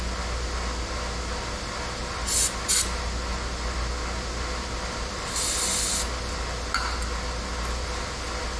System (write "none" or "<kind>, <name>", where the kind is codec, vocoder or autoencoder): none